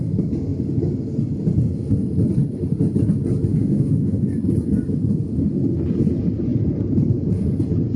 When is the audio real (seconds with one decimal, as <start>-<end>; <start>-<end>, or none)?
0.0-3.5; 4.3-8.0